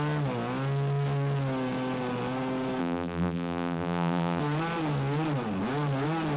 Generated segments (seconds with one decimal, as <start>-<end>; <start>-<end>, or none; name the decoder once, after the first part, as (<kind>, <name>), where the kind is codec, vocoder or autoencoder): 2.8-4.4 (vocoder, BigVGAN v2)